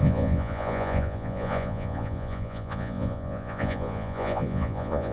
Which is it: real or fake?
fake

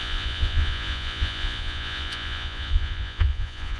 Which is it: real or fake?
fake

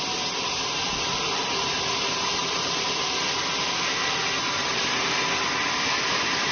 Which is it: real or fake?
real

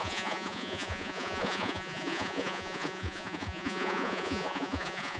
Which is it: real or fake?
fake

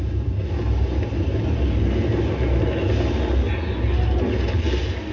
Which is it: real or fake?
real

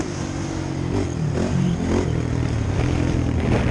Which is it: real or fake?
real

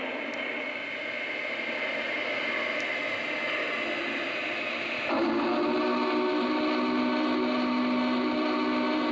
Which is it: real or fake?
real